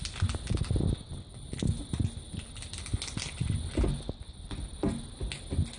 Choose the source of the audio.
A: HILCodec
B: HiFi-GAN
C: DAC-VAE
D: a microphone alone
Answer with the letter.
D